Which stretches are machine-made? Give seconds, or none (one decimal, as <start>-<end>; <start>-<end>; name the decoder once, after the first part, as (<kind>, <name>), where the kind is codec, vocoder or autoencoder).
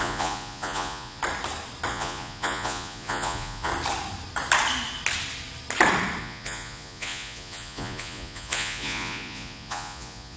0.0-1.2 (vocoder, Vocos); 1.9-3.7; 6.2-10.4